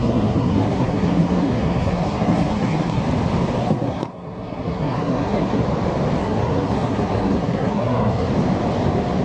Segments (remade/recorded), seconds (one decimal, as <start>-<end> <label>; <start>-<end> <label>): 0.0-3.0 remade; 3.0-3.6 recorded; 3.6-5.6 remade; 5.6-6.2 recorded; 6.2-8.3 remade; 8.3-9.2 recorded